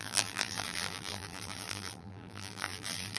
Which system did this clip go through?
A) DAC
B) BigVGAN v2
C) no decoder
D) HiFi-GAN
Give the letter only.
B